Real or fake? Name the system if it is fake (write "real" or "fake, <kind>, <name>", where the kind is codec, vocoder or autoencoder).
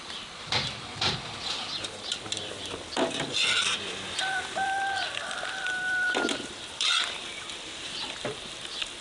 fake, vocoder, BigVGAN v2